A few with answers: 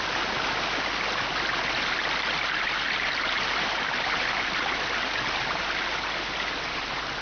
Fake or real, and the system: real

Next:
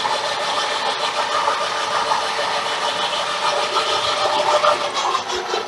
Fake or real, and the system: real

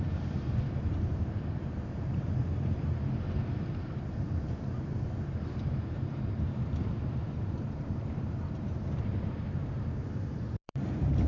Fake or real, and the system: fake, vocoder, BigVGAN v2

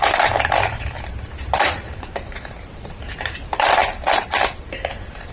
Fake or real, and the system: fake, vocoder, BigVGAN v2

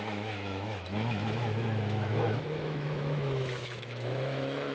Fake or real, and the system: fake, autoencoder, DAC-VAE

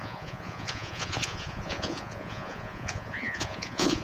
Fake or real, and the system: fake, vocoder, Vocos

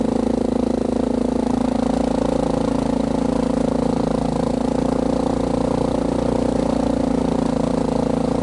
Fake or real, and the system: real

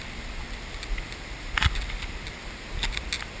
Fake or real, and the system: real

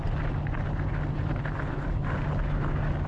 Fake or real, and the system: real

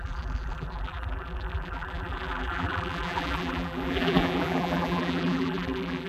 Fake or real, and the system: fake, vocoder, BigVGAN v2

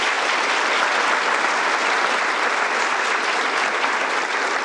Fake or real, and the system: real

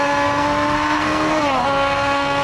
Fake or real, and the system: fake, codec, SNAC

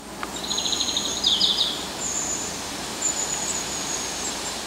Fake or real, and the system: real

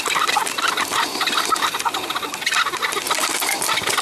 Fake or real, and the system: real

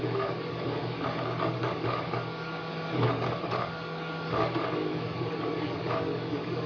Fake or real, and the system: fake, codec, DAC